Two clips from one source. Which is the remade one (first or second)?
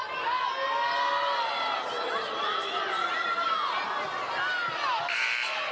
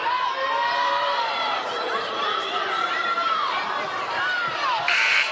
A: second